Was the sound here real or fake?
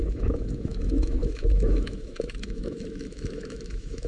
fake